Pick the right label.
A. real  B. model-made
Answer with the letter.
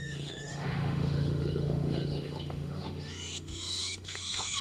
B